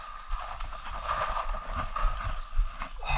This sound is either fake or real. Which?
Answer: real